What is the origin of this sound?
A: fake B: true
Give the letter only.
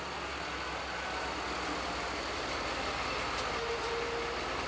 B